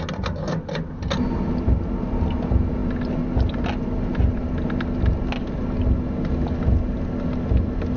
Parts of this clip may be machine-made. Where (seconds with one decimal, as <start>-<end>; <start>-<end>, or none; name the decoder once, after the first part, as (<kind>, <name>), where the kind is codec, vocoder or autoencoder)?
none